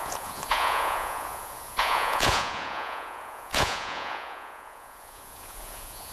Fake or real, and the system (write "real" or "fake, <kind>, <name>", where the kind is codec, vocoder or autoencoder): fake, vocoder, Vocos